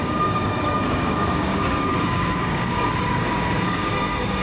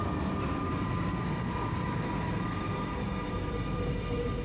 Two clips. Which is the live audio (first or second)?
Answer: second